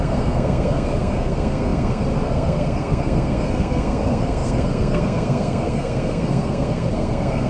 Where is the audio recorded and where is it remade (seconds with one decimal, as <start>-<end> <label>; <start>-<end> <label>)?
0.0-7.5 remade